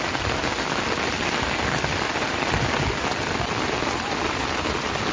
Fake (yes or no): no